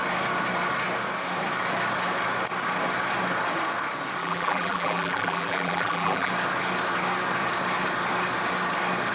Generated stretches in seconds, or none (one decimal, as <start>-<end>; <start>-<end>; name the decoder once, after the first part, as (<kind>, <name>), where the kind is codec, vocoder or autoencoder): 4.2-6.3 (vocoder, BigVGAN v2)